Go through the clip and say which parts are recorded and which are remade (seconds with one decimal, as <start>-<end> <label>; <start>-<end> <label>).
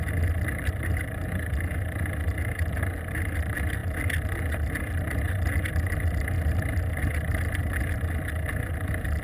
0.0-9.2 recorded